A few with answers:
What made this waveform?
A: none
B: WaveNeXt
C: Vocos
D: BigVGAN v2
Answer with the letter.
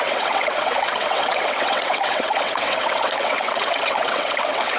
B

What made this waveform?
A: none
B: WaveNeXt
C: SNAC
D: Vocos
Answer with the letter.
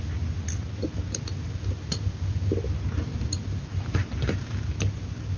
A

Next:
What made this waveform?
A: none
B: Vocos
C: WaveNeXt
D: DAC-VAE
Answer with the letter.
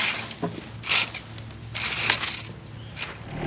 A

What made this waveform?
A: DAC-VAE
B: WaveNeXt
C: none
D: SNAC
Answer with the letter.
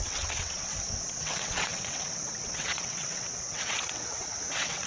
B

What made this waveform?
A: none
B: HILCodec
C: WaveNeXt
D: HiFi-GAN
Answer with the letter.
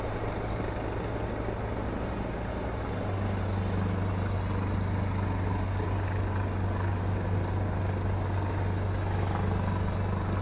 A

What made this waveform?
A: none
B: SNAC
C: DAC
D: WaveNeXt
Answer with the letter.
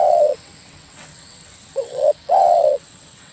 D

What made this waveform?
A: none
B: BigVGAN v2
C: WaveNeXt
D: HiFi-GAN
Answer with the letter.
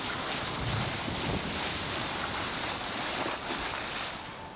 A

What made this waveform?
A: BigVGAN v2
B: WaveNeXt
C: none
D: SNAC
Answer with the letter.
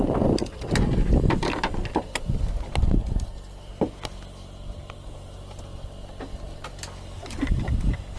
C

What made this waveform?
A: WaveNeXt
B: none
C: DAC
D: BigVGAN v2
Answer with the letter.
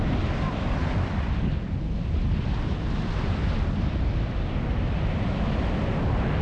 B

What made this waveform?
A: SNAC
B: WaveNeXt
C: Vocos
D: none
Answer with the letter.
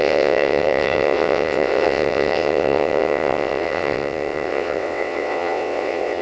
B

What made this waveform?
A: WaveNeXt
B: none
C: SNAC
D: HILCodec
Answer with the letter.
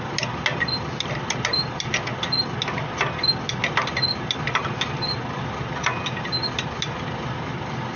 B